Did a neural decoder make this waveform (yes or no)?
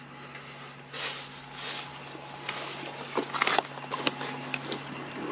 no